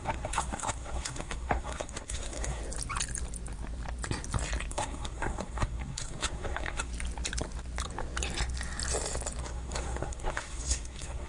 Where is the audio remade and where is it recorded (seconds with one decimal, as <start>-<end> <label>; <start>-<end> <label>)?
0.0-2.6 remade; 2.6-4.7 recorded; 4.7-6.9 remade; 6.9-9.4 recorded; 9.4-11.3 remade